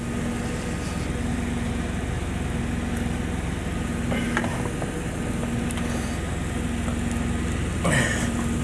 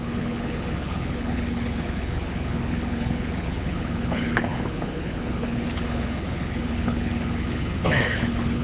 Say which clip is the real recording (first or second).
first